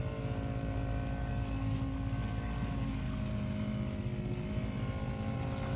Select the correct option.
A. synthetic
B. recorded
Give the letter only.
B